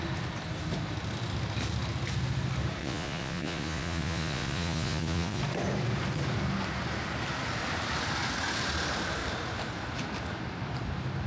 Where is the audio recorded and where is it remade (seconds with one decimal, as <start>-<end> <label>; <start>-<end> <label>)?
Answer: 0.0-2.8 recorded; 2.8-5.4 remade; 5.4-11.3 recorded